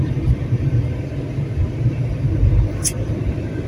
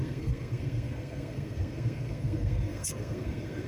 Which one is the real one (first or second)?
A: first